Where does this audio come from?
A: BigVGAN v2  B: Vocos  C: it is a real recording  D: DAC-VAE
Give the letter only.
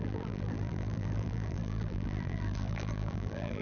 A